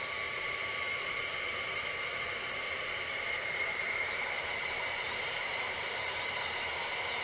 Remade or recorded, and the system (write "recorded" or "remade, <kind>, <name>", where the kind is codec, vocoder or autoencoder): remade, vocoder, BigVGAN v2